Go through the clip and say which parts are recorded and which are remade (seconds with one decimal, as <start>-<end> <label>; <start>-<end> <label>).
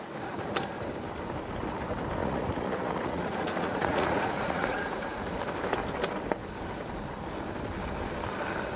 0.0-2.2 recorded; 2.2-5.3 remade; 5.3-8.8 recorded